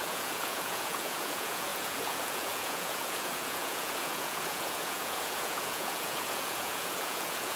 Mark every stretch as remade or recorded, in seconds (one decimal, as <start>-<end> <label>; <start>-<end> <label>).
0.0-7.6 remade